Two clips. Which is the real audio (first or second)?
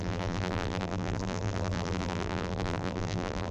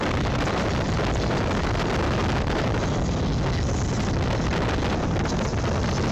second